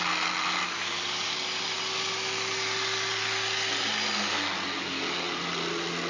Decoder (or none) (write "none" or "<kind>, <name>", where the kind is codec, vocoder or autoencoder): none